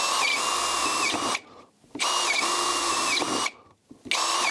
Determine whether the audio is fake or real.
real